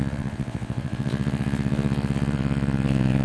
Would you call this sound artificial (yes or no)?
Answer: yes